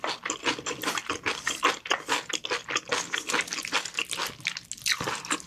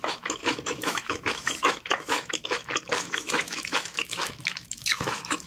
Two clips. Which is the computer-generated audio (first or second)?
second